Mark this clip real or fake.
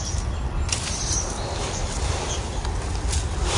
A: real